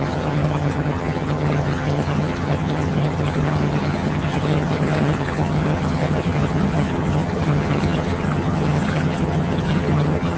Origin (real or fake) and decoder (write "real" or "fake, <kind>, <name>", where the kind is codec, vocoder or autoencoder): fake, vocoder, HiFi-GAN